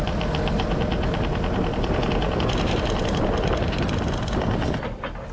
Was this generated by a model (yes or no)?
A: no